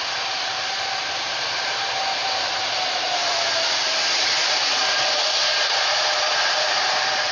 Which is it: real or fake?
fake